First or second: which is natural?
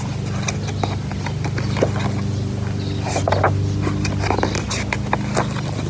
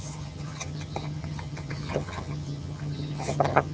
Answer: first